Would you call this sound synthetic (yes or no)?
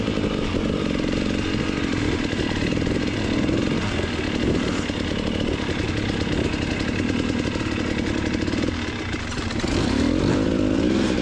no